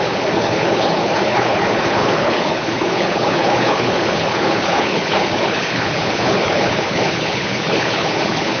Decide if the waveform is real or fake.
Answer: fake